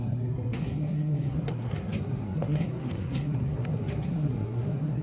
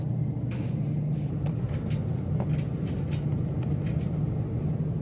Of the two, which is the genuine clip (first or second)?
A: second